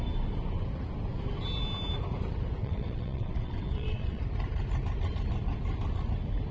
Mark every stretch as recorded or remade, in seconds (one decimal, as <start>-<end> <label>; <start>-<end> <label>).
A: 0.0-2.6 recorded; 2.6-4.2 remade; 4.2-6.5 recorded